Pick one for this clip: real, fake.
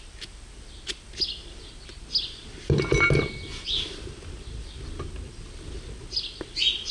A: real